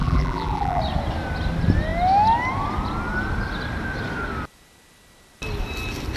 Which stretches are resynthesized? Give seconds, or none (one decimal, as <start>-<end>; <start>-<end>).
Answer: 0.0-0.8